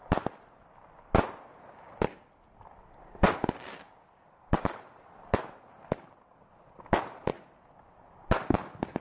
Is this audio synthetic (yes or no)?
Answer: no